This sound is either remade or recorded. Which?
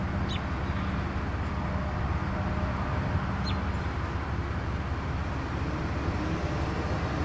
recorded